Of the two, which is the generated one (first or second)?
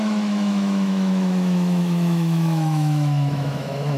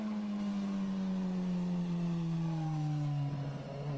first